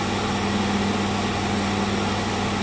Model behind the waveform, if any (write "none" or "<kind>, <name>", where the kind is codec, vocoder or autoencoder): none